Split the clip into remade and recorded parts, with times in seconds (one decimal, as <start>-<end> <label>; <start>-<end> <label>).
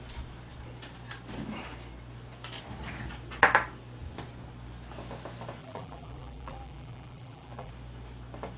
0.0-5.6 recorded; 5.6-7.7 remade; 7.7-8.6 recorded